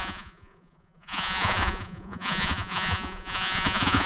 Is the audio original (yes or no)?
no